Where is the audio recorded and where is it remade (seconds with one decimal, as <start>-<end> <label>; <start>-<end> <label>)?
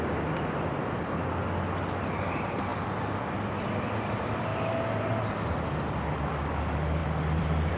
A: 0.0-2.7 remade; 2.7-3.7 recorded; 3.7-7.8 remade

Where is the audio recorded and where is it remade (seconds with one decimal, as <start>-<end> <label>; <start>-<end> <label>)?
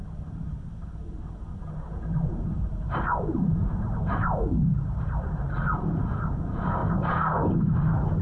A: 0.0-0.5 remade; 0.5-2.3 recorded; 2.3-8.2 remade